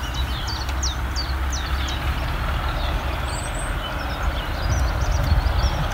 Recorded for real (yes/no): yes